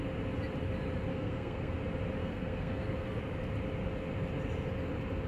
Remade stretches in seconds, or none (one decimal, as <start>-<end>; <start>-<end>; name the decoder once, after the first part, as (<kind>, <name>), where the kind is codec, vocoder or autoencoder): 1.1-1.7 (codec, SNAC); 2.2-3.2